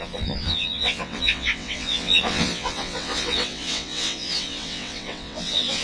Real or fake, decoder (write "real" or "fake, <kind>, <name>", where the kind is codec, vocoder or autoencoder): fake, vocoder, WaveNeXt